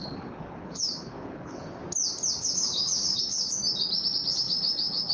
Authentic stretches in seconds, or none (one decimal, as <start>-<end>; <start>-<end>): 1.8-2.4; 3.6-4.4